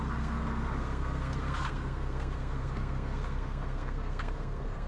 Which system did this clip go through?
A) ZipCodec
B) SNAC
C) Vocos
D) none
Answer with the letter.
B